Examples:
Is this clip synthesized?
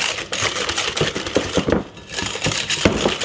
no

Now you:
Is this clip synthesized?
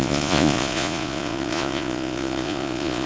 yes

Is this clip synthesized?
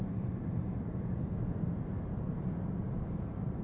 no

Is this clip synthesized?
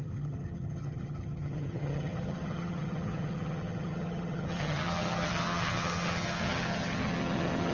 yes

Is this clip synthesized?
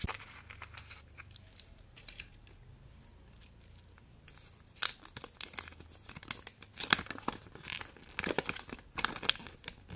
no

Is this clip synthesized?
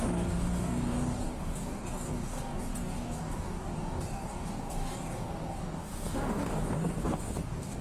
yes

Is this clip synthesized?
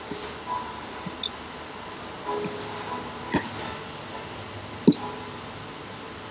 no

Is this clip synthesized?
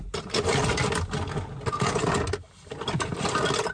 no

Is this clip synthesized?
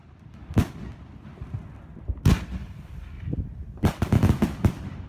no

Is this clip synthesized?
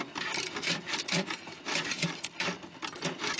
yes